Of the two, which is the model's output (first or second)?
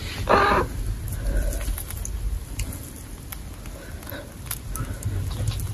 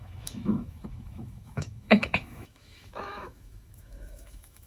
second